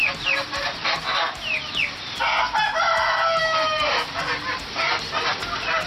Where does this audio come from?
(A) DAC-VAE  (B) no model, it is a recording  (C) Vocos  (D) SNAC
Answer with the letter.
B